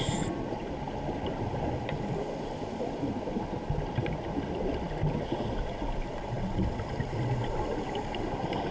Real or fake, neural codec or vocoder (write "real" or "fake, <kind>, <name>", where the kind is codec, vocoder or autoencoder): real